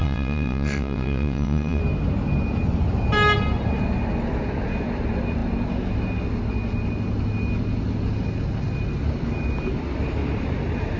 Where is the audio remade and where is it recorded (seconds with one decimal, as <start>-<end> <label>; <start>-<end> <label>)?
0.0-1.8 remade; 1.8-11.0 recorded